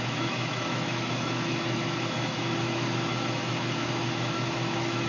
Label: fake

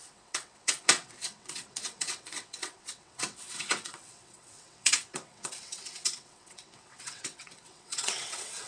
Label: fake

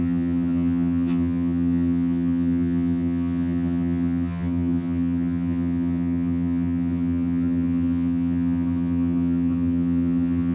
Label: fake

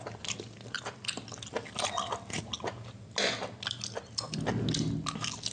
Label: real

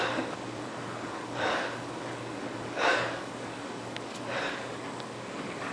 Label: fake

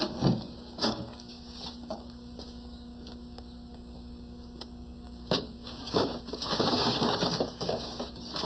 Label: fake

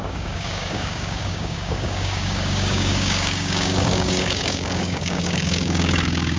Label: fake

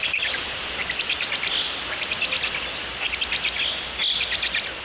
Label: real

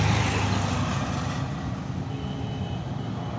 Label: real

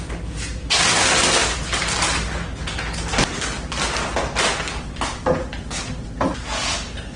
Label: real